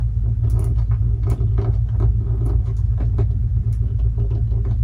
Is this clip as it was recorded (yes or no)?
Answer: yes